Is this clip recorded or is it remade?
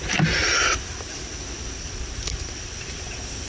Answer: recorded